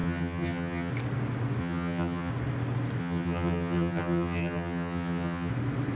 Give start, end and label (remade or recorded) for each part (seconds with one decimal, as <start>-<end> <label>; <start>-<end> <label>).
0.0-0.9 remade; 0.9-1.6 recorded; 1.6-2.3 remade; 2.3-3.0 recorded; 3.0-5.5 remade; 5.5-5.9 recorded